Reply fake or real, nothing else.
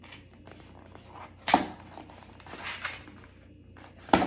real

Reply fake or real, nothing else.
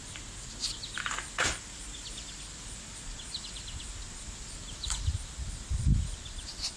real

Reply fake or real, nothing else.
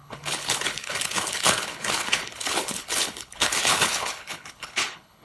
fake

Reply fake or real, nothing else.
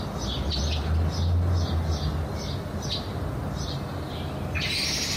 real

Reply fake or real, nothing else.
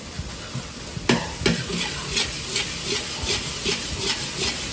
real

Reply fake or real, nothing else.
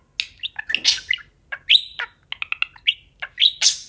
real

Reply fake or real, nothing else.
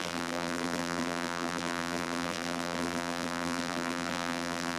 fake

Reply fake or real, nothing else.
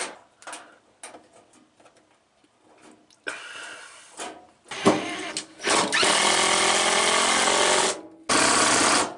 real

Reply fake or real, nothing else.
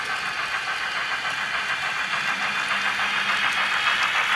real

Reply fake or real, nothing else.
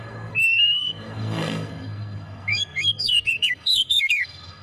fake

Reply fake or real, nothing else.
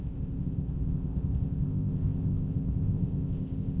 fake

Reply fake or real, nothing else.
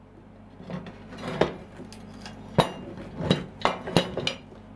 real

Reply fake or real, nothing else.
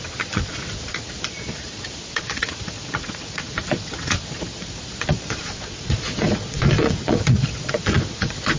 fake